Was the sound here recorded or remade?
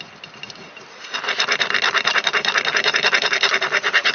recorded